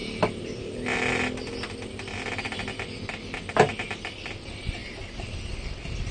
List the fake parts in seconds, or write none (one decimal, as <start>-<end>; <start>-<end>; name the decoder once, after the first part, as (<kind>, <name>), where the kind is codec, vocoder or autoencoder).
none